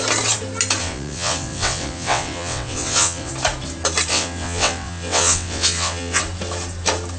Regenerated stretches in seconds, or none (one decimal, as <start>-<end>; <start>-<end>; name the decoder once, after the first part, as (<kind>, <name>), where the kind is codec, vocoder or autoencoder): 0.8-3.3 (vocoder, WaveNeXt); 4.1-6.2